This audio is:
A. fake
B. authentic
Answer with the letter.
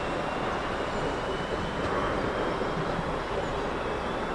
B